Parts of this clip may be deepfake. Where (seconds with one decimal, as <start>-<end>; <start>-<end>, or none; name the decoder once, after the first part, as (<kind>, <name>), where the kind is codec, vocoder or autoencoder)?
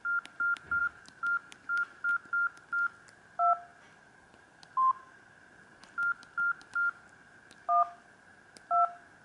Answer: 0.8-2.1 (vocoder, BigVGAN v2)